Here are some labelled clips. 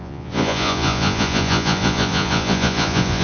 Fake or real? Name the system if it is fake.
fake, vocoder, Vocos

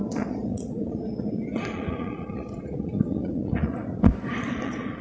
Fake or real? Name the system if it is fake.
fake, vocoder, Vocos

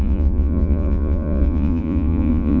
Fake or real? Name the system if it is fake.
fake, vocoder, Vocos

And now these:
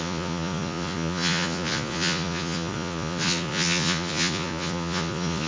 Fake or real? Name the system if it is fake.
fake, vocoder, Vocos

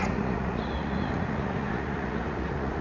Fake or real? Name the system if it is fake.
fake, vocoder, Vocos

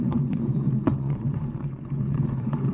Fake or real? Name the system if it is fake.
fake, vocoder, Vocos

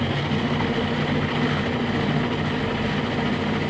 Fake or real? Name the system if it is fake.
real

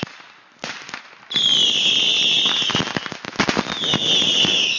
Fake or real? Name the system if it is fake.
real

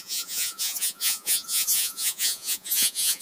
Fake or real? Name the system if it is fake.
fake, vocoder, Vocos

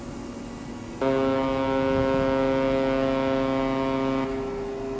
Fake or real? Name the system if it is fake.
real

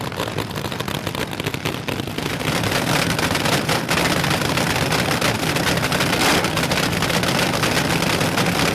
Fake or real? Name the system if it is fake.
real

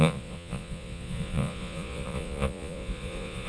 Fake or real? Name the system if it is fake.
fake, vocoder, Vocos